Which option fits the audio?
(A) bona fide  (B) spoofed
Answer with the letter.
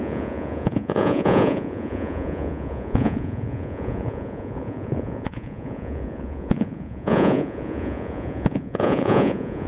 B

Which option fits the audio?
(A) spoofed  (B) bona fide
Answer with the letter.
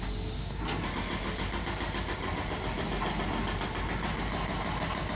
B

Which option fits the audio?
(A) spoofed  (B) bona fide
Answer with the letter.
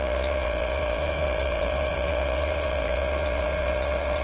A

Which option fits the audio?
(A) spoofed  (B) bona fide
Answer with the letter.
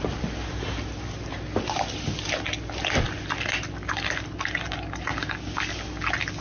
B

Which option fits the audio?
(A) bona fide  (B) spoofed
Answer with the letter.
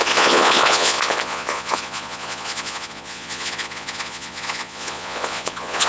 B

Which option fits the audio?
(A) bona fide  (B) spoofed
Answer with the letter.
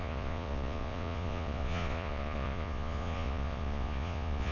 B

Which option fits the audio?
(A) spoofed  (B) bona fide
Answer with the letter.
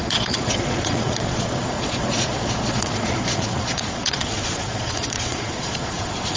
A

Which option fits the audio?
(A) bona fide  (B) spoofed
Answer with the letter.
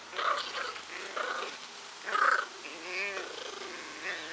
A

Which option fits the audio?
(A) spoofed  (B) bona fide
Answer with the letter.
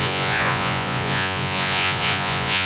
A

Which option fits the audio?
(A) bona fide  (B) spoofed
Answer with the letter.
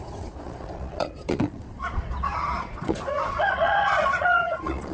B